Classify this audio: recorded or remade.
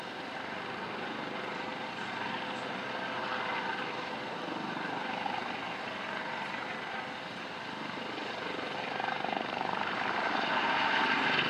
recorded